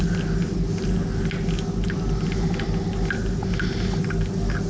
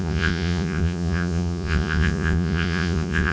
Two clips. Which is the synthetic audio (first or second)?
second